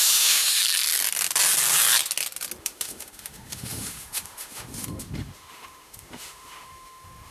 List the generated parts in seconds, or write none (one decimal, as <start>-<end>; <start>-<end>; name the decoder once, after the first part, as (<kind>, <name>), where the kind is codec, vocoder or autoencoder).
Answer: 0.0-0.6 (autoencoder, DAC-VAE); 2.6-7.3